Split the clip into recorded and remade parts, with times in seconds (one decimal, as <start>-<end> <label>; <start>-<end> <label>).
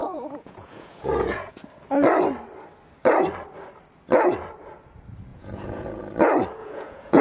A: 0.0-1.6 remade; 1.6-5.3 recorded; 5.3-6.0 remade; 6.0-6.6 recorded; 6.6-7.2 remade